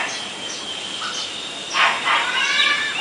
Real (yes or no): yes